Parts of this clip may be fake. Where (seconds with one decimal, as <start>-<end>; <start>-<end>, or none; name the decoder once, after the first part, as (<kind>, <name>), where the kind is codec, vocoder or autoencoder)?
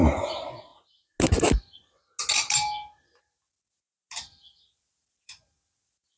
none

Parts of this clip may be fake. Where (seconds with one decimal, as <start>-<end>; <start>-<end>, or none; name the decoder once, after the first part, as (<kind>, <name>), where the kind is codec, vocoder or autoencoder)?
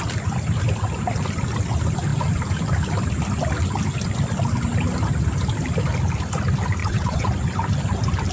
6.8-7.3 (vocoder, WaveNeXt)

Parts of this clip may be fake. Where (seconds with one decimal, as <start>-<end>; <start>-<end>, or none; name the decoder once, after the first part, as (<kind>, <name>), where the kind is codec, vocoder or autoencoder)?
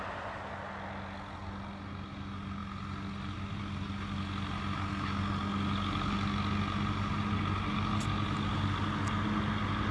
none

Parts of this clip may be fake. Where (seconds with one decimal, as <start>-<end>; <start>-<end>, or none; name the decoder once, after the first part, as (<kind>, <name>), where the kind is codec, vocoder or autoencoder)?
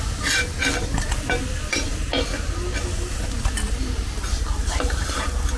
none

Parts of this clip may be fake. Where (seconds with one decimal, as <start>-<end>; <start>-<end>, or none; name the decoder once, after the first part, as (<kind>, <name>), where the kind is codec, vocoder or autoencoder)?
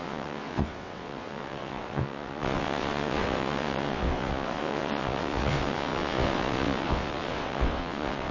0.0-8.3 (vocoder, WaveNeXt)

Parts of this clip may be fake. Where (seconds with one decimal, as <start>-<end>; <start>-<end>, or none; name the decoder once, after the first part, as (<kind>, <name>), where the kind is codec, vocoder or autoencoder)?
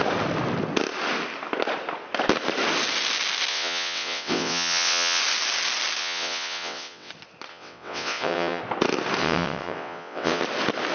3.5-5.2 (vocoder, WaveNeXt); 6.0-7.1; 7.5-8.6; 9.2-10.4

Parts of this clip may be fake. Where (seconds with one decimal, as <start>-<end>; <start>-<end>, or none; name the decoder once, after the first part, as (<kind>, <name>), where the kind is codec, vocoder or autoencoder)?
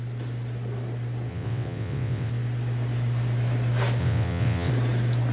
1.3-2.3 (vocoder, WaveNeXt); 4.0-4.7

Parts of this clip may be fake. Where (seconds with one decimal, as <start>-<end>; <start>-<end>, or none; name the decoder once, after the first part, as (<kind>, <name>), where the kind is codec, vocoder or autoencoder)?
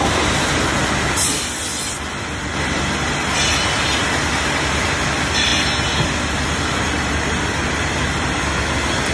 none